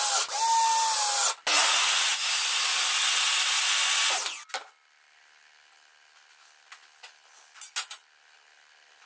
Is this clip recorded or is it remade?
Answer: recorded